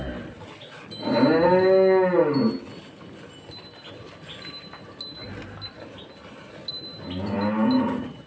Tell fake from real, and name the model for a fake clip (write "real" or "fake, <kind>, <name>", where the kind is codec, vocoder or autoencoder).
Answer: real